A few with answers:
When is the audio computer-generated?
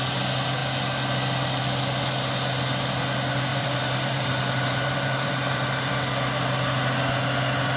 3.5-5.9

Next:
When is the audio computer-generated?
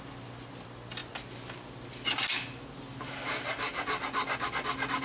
none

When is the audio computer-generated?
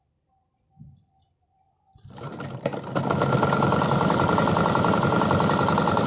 0.0-2.3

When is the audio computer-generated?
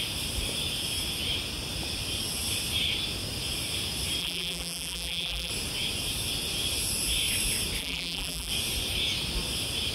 4.2-5.5; 7.8-8.5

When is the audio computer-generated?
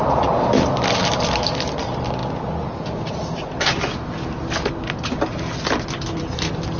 0.0-6.8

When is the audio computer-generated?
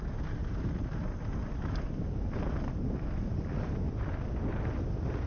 0.4-1.0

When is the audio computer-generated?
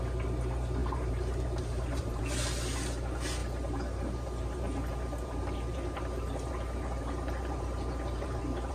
0.8-2.2; 3.4-8.7